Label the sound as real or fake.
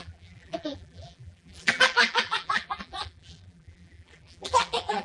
fake